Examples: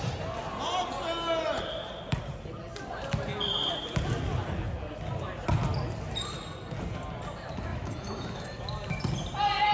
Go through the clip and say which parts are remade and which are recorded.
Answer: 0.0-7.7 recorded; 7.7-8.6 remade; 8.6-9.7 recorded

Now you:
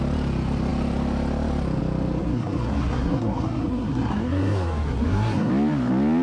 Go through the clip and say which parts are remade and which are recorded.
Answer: 0.0-2.2 recorded; 2.2-5.5 remade; 5.5-6.2 recorded

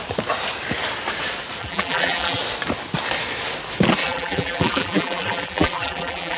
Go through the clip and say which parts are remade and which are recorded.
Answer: 0.0-1.6 recorded; 1.6-2.4 remade; 2.4-4.0 recorded; 4.0-6.4 remade

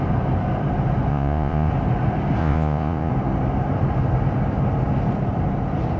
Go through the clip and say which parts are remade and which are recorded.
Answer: 0.0-1.1 recorded; 1.1-1.7 remade; 1.7-2.4 recorded; 2.4-3.1 remade; 3.1-6.0 recorded